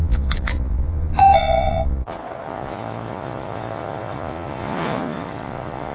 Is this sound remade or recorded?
remade